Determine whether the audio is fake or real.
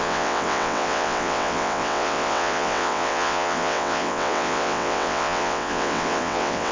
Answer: fake